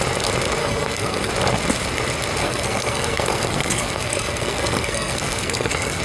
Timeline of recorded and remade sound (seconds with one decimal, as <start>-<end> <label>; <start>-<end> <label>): 0.0-0.6 recorded; 0.6-1.3 remade; 1.3-2.4 recorded; 2.4-6.0 remade